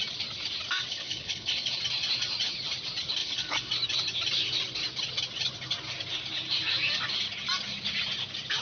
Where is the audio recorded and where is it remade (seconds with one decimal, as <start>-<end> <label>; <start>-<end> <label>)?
0.0-0.9 recorded; 0.9-1.8 remade; 1.8-3.2 recorded; 3.2-3.7 remade; 3.7-8.6 recorded